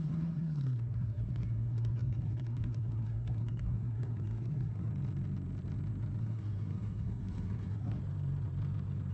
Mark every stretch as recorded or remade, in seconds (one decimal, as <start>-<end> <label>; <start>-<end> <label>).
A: 0.0-4.9 remade; 4.9-6.2 recorded; 6.2-8.0 remade; 8.0-9.1 recorded